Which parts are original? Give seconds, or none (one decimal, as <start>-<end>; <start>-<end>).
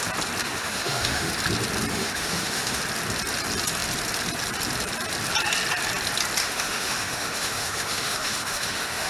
0.0-0.4; 1.3-1.9; 2.8-6.4